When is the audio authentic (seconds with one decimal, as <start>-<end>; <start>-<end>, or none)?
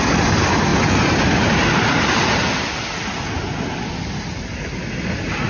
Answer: 0.0-5.5